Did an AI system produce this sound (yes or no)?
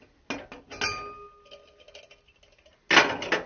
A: no